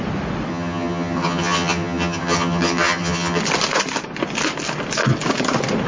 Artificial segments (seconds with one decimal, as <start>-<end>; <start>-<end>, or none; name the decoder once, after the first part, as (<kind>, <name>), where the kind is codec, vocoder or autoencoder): 0.5-3.4 (vocoder, HiFi-GAN)